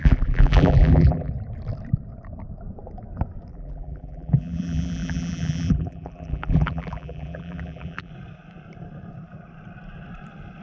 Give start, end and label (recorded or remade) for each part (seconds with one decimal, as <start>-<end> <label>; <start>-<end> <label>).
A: 0.0-1.3 remade; 1.3-3.5 recorded; 3.5-8.1 remade; 8.1-10.6 recorded